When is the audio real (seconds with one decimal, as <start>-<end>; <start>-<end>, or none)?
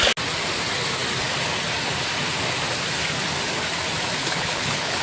0.0-4.2